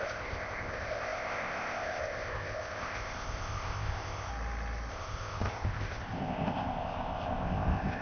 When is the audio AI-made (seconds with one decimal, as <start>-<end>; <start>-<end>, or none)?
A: 0.0-4.3; 4.9-8.0